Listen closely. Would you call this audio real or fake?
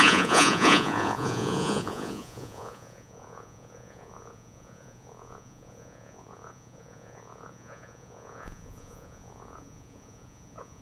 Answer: fake